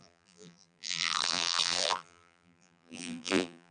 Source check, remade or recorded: remade